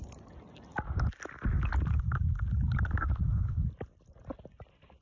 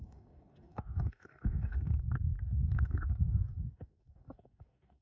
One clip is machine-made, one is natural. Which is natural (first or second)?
first